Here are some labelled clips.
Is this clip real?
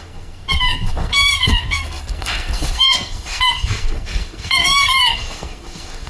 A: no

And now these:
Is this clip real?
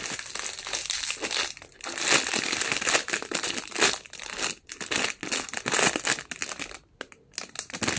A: yes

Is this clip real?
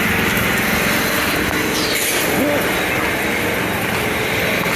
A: yes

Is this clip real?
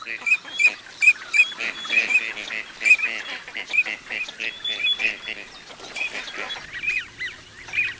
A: yes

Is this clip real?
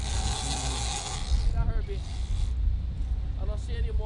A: yes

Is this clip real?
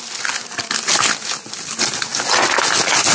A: yes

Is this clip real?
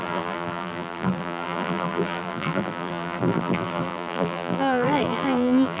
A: no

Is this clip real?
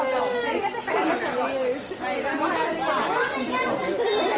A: yes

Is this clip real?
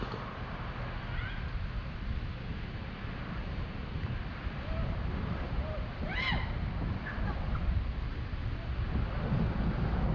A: yes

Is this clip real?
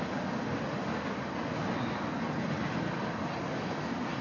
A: yes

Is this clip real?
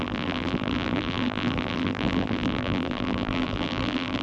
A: no